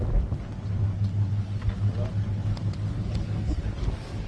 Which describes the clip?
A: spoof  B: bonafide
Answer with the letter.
B